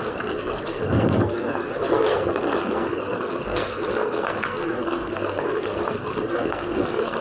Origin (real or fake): fake